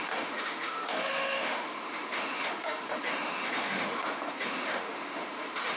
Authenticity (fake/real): fake